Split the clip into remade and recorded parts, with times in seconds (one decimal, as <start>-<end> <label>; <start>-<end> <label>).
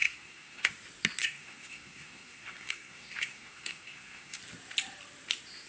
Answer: 0.0-0.7 remade; 0.7-1.2 recorded; 1.2-4.4 remade; 4.4-5.7 recorded